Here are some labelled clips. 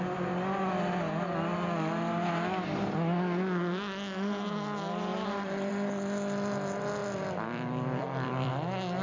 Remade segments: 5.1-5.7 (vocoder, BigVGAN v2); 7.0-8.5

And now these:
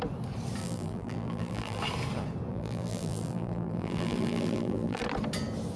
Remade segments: 0.6-1.8 (vocoder, BigVGAN v2); 2.5-5.0

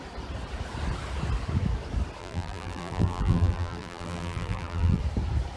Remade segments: 2.2-5.0 (vocoder, BigVGAN v2)

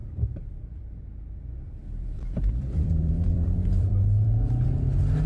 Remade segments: 0.0-0.8 (vocoder, BigVGAN v2); 1.8-3.9